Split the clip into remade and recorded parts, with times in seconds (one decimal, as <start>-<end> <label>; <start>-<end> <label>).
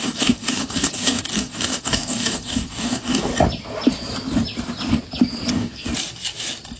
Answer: 0.0-3.3 remade; 3.3-5.5 recorded; 5.5-5.9 remade; 5.9-6.8 recorded